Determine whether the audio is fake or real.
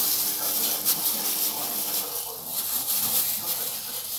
real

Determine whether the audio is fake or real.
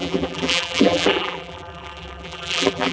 fake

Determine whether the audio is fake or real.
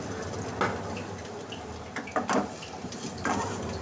real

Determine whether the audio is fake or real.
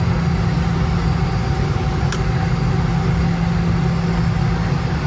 real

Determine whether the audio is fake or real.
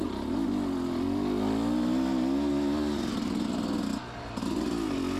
real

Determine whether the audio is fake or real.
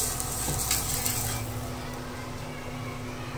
real